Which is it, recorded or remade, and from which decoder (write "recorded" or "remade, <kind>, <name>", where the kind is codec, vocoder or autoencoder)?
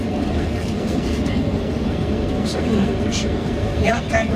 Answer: remade, codec, SNAC